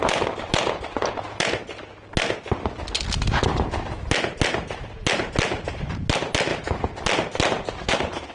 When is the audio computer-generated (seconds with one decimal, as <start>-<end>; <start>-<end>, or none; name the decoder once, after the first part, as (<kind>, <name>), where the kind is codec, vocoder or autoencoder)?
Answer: none